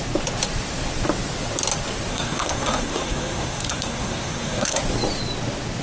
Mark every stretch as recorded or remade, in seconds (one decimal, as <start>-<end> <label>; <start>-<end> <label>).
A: 0.0-2.1 recorded; 2.1-4.8 remade; 4.8-5.8 recorded